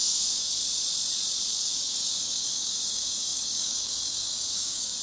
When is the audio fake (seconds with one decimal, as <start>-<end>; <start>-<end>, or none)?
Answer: 0.0-0.6; 1.5-5.0